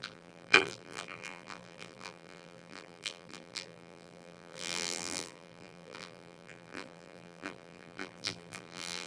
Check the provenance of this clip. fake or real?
fake